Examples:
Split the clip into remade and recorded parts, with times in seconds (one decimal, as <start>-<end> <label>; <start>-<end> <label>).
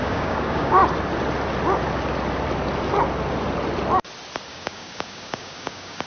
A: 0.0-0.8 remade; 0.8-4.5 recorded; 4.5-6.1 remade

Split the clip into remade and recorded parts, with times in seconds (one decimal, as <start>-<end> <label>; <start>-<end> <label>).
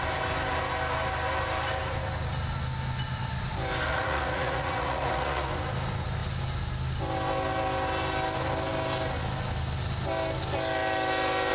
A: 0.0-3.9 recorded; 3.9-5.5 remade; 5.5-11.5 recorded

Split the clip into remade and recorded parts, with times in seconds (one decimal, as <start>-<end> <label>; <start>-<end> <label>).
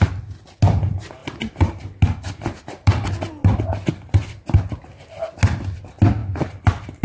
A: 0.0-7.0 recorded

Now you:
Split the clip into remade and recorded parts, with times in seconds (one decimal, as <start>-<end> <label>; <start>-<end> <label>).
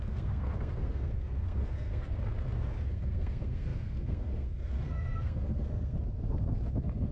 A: 0.0-7.1 remade